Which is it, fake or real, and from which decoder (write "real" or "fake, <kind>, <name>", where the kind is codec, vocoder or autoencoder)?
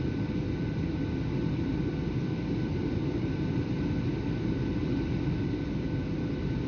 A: real